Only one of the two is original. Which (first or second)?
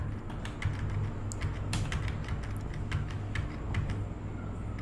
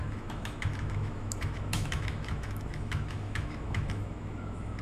first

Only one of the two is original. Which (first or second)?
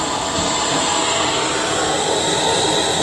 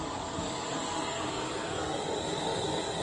first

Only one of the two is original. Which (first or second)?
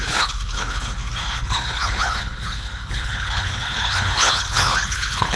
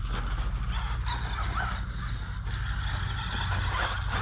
second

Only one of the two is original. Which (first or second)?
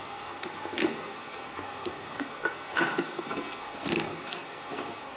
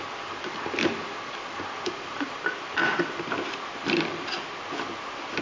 second